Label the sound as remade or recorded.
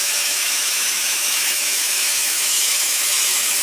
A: remade